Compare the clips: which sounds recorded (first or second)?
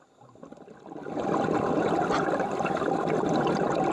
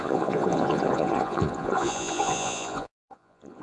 first